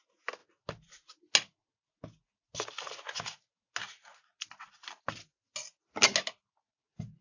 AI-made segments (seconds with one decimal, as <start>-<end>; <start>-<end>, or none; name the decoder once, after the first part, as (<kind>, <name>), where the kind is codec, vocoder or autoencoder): none